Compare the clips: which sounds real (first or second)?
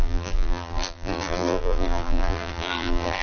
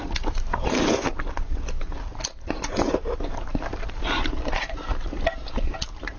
second